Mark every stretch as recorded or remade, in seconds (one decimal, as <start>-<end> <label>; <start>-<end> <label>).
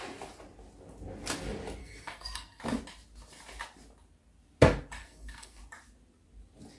0.0-1.8 recorded; 1.8-2.6 remade; 2.6-5.0 recorded; 5.0-5.6 remade; 5.6-6.8 recorded